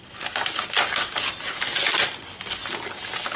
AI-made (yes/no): no